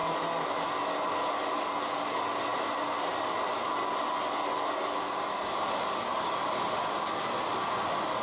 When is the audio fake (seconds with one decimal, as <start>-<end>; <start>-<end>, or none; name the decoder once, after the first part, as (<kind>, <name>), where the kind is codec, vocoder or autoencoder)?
none